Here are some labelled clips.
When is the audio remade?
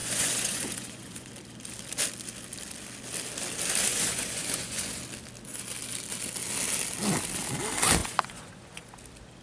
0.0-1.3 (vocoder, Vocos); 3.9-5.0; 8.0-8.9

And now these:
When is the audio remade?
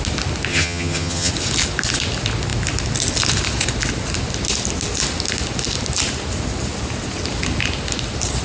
0.5-1.3 (vocoder, HiFi-GAN)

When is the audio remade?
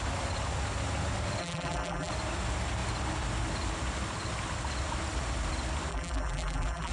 1.4-2.1 (vocoder, BigVGAN v2); 5.9-6.9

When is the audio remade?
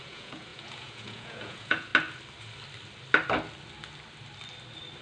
0.0-1.9 (vocoder, Vocos)